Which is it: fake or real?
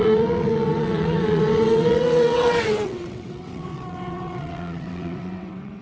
fake